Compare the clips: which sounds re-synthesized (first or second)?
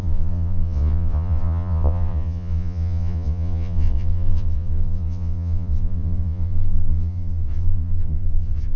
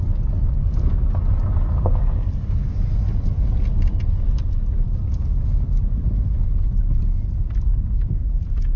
first